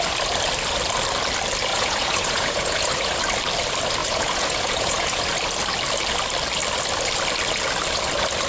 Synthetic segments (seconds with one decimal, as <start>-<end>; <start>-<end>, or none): 1.7-3.1; 4.0-5.2